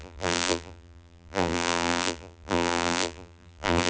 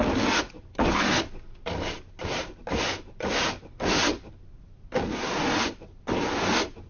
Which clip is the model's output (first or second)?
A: first